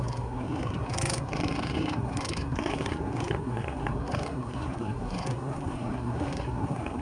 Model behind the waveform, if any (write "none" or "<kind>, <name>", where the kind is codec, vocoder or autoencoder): codec, SNAC